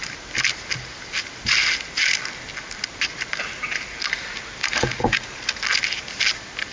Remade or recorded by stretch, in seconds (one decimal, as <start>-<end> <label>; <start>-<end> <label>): 0.0-4.6 recorded; 4.6-5.4 remade; 5.4-6.7 recorded